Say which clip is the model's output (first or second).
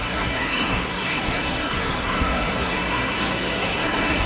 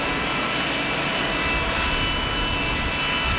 first